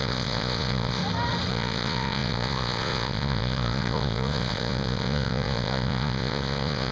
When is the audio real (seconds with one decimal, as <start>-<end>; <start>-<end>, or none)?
1.0-1.5